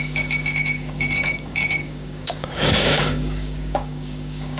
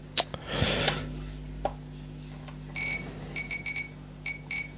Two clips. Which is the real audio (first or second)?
second